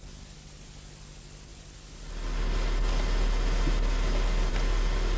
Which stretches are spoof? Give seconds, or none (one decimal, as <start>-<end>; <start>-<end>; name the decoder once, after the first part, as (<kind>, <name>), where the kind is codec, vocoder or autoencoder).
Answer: none